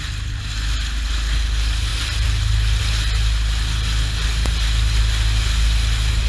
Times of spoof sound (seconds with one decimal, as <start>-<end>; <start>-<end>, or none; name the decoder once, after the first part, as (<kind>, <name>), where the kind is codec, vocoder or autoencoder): 1.9-2.8 (vocoder, BigVGAN v2)